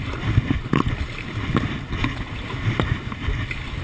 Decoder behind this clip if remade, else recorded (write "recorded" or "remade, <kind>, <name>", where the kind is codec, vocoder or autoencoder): recorded